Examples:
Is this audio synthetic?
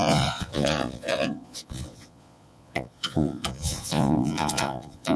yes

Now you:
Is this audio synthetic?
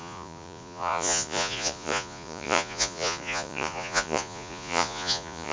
yes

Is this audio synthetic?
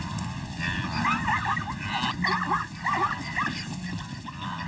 no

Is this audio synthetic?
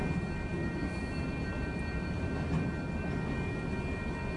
no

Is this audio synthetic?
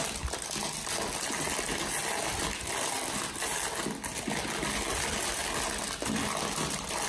no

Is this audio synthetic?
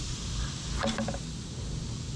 no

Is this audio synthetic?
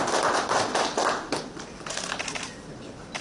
no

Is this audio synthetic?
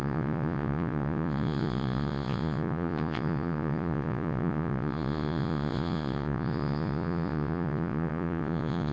yes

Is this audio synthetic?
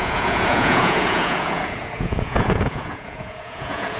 yes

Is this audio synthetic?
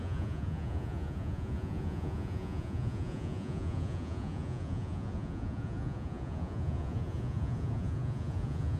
yes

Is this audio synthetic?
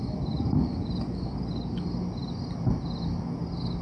no